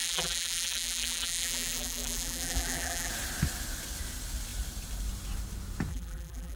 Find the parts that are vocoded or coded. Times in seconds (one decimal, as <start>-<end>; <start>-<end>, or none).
0.0-3.1; 5.9-6.6